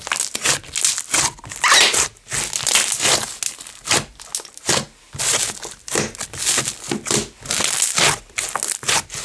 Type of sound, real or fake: real